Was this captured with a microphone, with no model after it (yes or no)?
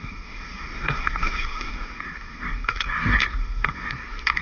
no